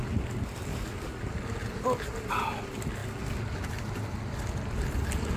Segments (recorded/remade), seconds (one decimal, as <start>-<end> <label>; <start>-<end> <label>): 0.0-5.4 recorded

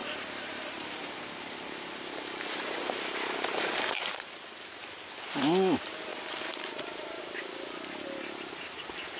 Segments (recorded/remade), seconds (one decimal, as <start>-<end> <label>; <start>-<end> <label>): 0.0-4.3 remade; 4.3-6.1 recorded; 6.1-7.2 remade; 7.2-9.2 recorded

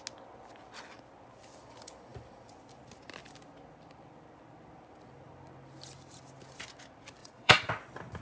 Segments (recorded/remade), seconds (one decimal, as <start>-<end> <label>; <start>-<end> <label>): 0.0-7.2 recorded; 7.2-7.7 remade; 7.7-8.2 recorded

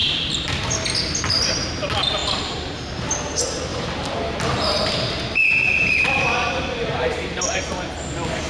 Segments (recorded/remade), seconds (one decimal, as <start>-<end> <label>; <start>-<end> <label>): 0.0-1.7 remade; 1.7-2.2 recorded; 2.2-2.8 remade; 2.8-3.7 recorded; 3.7-7.6 remade; 7.6-8.5 recorded

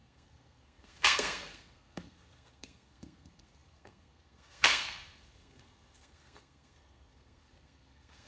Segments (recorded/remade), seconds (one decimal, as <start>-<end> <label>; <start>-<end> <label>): 0.0-8.3 remade

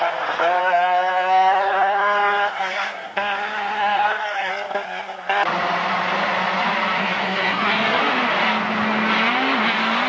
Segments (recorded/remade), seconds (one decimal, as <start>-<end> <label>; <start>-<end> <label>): 0.0-0.6 recorded; 0.6-4.5 remade; 4.5-7.0 recorded; 7.0-8.0 remade; 8.0-10.1 recorded

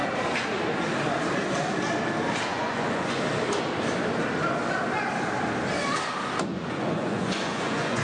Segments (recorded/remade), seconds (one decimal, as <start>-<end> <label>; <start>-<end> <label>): 0.0-2.5 recorded; 2.5-3.2 remade; 3.2-6.5 recorded; 6.5-8.0 remade